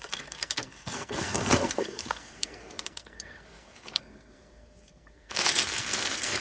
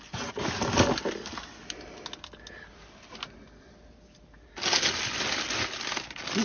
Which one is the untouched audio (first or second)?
second